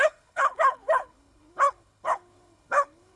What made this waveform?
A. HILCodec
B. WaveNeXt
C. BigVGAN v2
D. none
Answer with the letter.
A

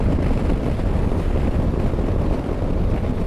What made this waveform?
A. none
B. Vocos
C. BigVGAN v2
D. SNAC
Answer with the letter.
A